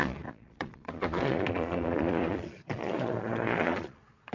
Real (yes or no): no